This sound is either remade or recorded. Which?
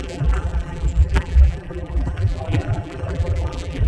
remade